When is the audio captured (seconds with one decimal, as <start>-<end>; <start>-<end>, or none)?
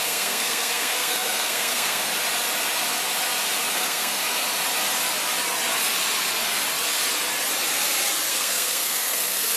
2.1-3.7; 4.2-8.3